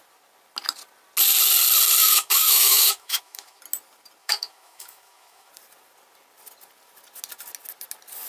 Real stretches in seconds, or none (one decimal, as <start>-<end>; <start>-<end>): 0.0-2.0; 3.6-4.2; 5.5-8.3